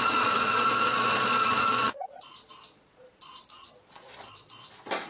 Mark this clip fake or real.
fake